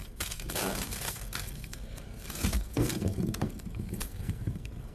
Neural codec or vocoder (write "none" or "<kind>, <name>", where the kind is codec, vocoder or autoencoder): codec, SNAC